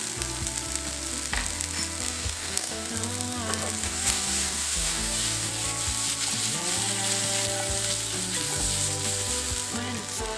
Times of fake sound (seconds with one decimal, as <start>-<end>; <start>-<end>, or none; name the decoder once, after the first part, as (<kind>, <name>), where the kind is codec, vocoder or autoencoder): 2.1-2.9 (codec, DAC); 3.8-5.5